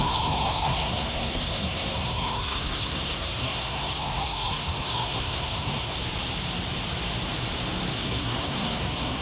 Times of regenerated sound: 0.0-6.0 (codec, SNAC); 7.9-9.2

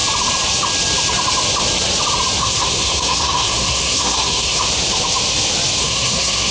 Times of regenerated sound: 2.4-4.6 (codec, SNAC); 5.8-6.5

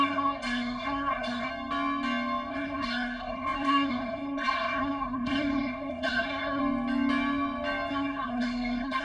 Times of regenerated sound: 0.0-1.5 (codec, SNAC); 2.5-6.6; 7.9-9.0

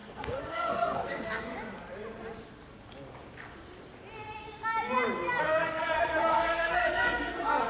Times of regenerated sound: 0.0-1.5 (codec, SNAC); 5.4-7.7

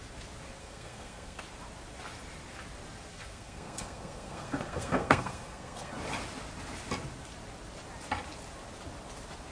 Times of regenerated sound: 0.6-1.4 (codec, SNAC); 3.1-5.9

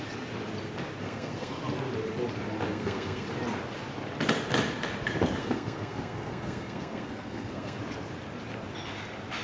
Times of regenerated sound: 1.0-1.6 (codec, SNAC); 2.7-3.3; 5.4-7.8

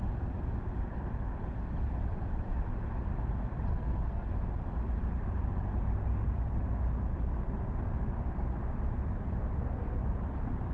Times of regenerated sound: 3.7-4.3 (codec, SNAC)

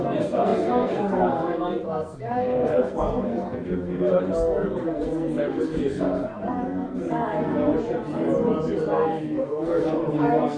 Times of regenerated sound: 0.0-7.7 (codec, SNAC); 8.8-10.6